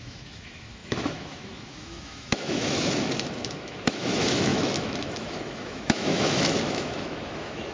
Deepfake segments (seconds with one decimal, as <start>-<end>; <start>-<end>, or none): 0.0-7.7